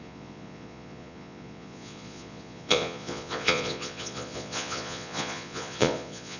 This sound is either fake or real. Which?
fake